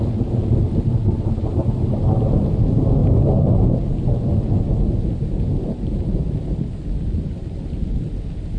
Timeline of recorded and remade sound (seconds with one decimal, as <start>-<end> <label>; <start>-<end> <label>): 0.0-8.6 recorded